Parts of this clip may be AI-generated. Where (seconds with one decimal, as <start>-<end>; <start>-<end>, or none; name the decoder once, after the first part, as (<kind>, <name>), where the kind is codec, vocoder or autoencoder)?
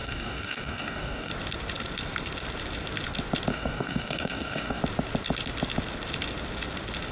0.0-1.3 (codec, DAC); 3.5-4.8